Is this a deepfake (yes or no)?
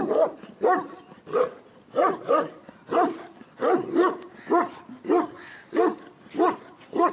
no